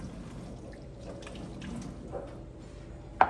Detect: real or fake real